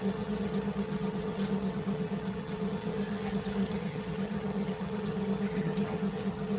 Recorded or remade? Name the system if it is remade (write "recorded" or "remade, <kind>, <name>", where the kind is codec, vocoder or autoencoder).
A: remade, vocoder, HiFi-GAN